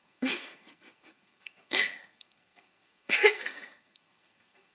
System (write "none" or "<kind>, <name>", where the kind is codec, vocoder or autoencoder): codec, SNAC